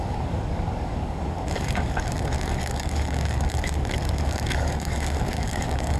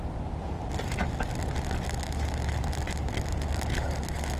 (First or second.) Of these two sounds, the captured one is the second